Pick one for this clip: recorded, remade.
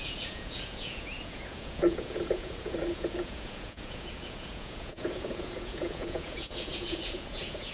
remade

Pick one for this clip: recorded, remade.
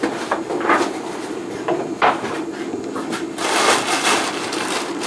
recorded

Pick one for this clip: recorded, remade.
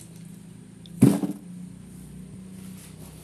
recorded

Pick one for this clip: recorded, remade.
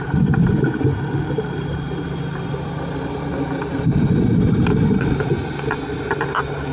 recorded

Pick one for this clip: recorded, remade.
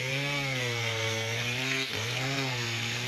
remade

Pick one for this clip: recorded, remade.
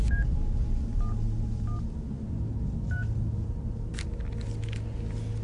recorded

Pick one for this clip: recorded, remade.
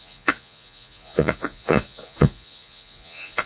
remade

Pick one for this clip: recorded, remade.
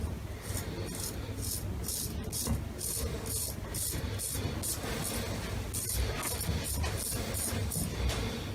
recorded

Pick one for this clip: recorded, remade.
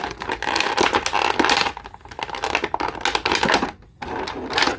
recorded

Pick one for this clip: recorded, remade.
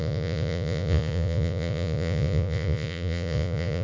remade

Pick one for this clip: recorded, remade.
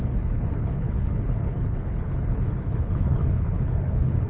remade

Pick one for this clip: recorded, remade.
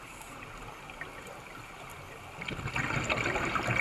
recorded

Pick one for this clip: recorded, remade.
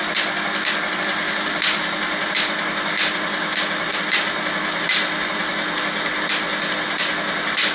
recorded